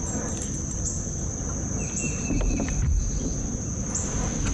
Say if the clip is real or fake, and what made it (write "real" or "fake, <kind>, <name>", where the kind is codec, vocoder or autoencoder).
real